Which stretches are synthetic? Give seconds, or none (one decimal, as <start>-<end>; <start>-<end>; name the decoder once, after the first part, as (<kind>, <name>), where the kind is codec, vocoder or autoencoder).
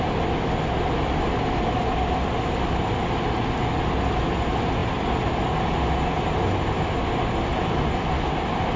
none